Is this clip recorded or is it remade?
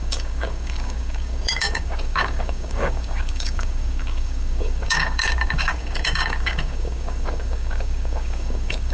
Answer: remade